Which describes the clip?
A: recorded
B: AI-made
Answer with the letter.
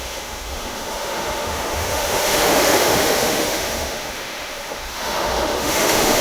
B